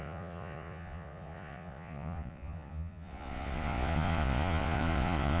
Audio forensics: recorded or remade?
remade